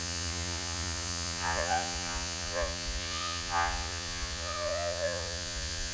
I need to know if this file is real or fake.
fake